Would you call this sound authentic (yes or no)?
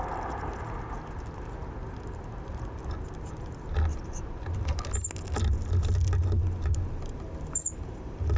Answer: yes